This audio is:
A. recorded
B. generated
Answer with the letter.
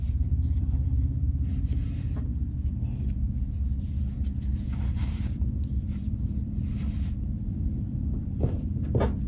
B